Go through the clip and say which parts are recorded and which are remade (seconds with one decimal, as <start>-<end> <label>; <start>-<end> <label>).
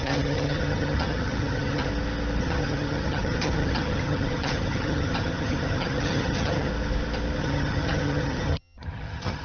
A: 0.0-1.9 remade; 1.9-2.4 recorded; 2.4-6.7 remade; 6.7-7.4 recorded; 7.4-9.4 remade